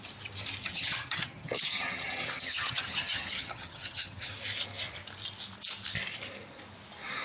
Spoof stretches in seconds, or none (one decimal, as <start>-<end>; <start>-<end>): 0.6-4.3